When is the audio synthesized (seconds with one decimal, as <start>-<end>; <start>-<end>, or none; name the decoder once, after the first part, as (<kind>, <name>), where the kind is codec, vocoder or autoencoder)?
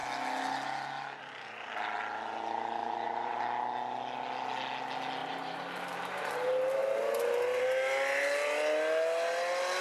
2.8-3.4 (vocoder, BigVGAN v2); 5.2-6.2